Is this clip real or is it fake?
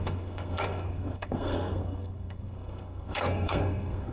fake